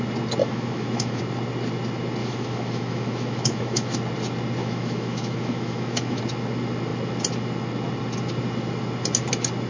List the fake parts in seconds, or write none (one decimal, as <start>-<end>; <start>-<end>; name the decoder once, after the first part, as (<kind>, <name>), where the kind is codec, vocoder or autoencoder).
0.4-1.2 (autoencoder, DAC-VAE); 2.2-4.0; 4.6-6.2